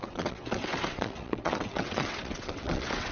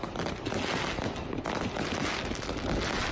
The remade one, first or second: first